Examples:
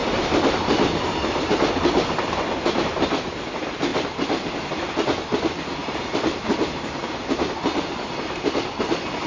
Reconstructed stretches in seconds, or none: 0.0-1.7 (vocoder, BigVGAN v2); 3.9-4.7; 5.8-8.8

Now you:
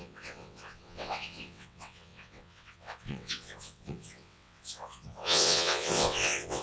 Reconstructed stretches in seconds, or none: 0.0-6.6 (vocoder, WaveNeXt)

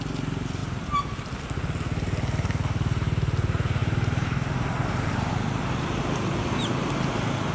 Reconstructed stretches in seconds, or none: 0.6-1.4 (vocoder, BigVGAN v2); 3.8-5.3

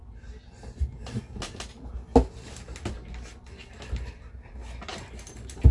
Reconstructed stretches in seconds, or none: none

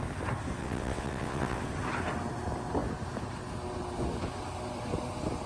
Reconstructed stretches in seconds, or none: 0.6-1.6 (vocoder, WaveNeXt)

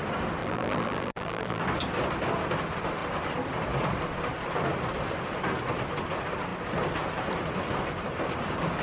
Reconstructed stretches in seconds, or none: 0.4-1.6 (vocoder, BigVGAN v2)